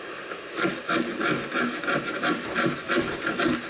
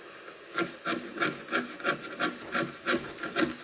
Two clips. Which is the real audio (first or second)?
second